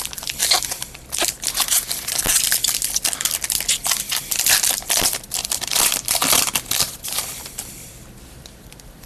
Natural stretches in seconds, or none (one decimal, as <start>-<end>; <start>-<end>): 0.4-5.7; 6.2-7.0